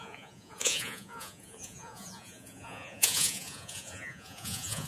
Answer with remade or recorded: remade